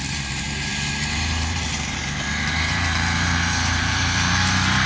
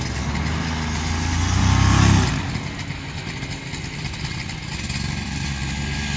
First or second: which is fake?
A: first